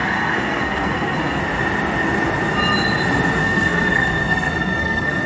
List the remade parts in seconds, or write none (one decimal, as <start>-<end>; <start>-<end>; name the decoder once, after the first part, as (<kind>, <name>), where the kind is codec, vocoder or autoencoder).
0.0-1.4 (codec, SNAC); 3.4-5.3